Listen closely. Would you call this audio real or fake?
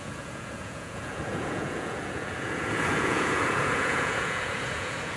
fake